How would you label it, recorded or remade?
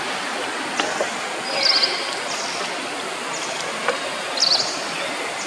recorded